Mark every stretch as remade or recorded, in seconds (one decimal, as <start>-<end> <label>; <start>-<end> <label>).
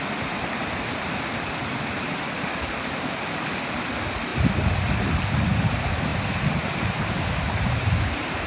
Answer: 0.0-8.5 recorded